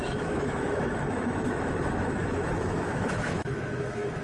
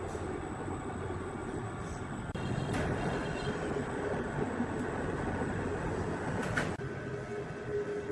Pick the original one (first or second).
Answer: second